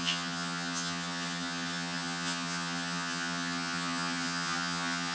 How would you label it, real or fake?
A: fake